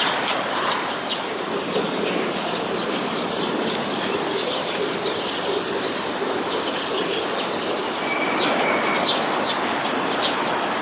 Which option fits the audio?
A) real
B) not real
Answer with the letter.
A